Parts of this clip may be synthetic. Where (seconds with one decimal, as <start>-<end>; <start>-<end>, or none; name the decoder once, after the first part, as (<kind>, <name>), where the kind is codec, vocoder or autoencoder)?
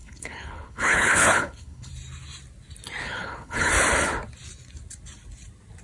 0.0-1.9 (codec, HILCodec); 3.0-3.7